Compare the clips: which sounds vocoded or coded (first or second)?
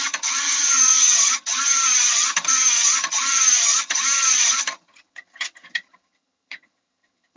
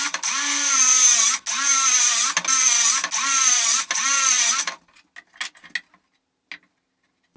first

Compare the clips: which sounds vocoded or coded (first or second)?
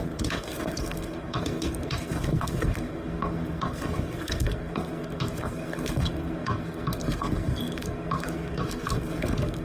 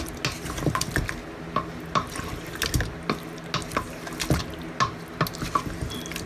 first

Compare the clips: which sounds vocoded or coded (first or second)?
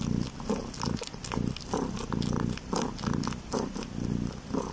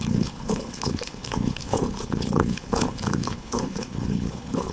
second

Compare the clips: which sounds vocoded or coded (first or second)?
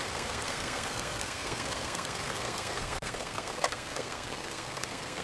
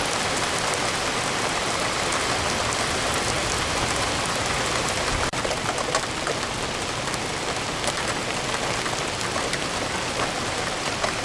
first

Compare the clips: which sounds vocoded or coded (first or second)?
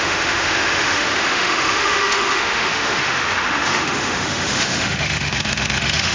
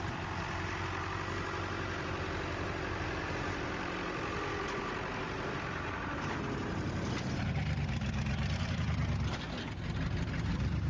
first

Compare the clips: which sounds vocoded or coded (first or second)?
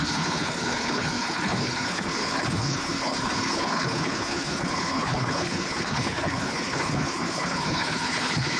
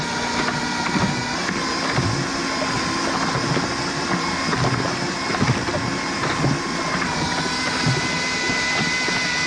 first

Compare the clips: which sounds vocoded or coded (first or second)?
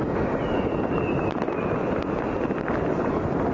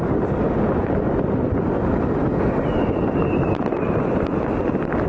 second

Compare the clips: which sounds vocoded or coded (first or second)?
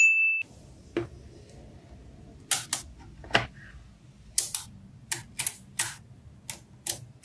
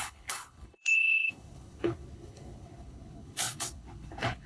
second